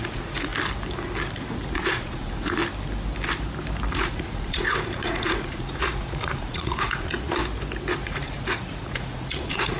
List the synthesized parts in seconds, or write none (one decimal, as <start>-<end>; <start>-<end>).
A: 0.0-0.5; 1.5-2.6; 3.9-7.4; 8.0-9.8